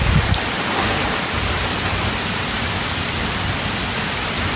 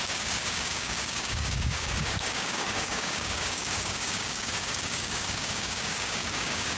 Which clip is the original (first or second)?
first